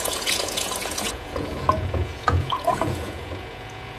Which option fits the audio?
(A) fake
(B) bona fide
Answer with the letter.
A